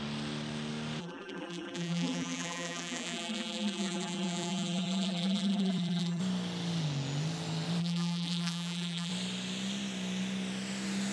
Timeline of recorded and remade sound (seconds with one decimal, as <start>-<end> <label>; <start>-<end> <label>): 0.0-1.0 recorded; 1.0-6.2 remade; 6.2-7.8 recorded; 7.8-9.1 remade; 9.1-11.1 recorded